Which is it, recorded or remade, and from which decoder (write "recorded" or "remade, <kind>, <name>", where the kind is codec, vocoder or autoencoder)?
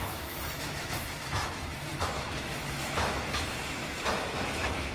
remade, autoencoder, DAC-VAE